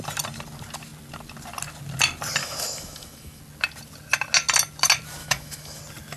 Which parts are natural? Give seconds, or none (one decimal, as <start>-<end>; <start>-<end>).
0.0-2.4; 3.4-5.2; 5.8-6.2

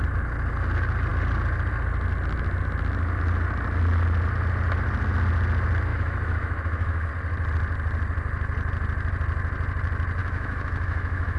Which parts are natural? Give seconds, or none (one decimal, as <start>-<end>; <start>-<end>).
0.0-5.9; 7.1-10.2

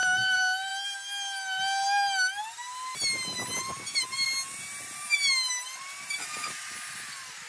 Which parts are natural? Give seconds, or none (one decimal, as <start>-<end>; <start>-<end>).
0.0-7.5

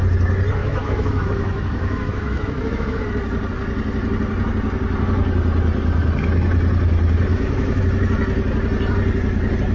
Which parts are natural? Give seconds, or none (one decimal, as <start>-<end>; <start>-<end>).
0.0-0.6; 3.0-7.3; 7.8-9.7

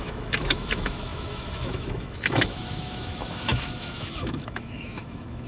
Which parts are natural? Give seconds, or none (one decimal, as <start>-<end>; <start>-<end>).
none

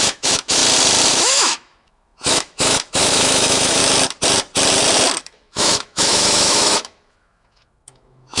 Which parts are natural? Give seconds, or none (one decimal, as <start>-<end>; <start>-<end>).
0.6-1.1; 3.8-5.2

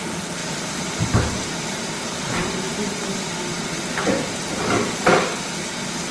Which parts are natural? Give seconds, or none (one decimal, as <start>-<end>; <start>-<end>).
0.0-6.1

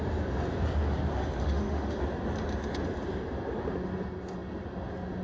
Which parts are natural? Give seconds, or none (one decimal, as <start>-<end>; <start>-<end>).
0.0-1.4; 2.0-5.2